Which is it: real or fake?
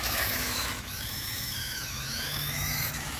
fake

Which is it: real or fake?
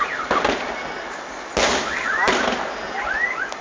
real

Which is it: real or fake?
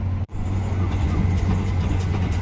fake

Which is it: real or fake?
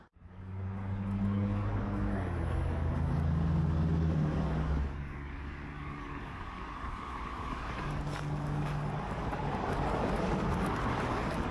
fake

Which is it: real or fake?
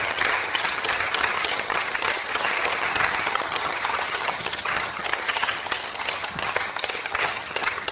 fake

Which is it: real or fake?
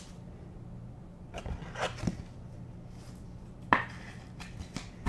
real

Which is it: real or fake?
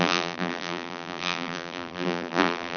fake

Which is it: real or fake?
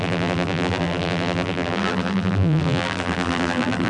fake